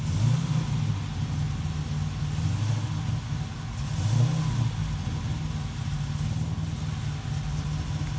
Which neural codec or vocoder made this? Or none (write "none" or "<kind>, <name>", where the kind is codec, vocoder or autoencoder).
none